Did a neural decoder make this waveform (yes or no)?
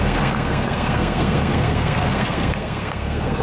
yes